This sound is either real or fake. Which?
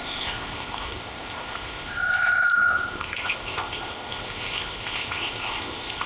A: fake